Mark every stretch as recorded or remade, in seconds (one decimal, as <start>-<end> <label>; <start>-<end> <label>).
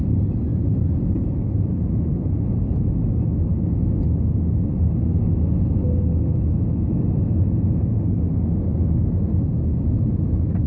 0.0-1.7 recorded; 1.7-3.2 remade; 3.2-10.7 recorded